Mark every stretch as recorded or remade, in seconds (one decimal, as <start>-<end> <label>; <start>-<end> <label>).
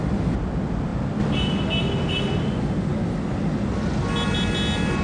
0.0-5.0 recorded